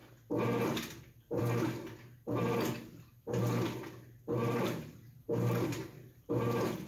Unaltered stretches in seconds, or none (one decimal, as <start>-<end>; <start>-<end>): 0.0-4.4; 6.3-6.9